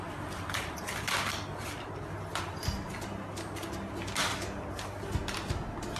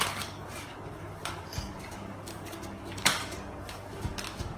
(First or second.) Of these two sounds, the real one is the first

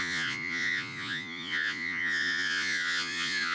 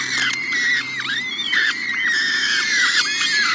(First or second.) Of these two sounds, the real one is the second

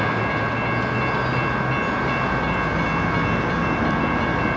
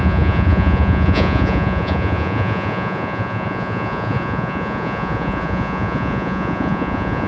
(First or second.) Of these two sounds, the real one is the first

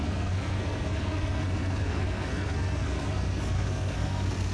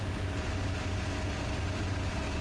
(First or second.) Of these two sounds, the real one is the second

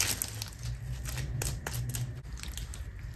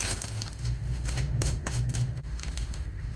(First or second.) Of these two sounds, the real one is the first